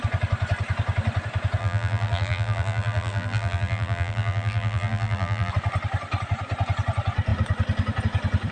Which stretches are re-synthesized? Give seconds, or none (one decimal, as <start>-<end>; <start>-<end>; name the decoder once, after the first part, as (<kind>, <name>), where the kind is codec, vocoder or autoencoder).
1.6-5.5 (vocoder, BigVGAN v2)